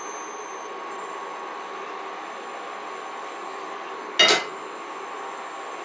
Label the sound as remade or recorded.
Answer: recorded